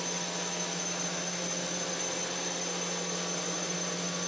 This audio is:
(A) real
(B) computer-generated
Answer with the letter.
A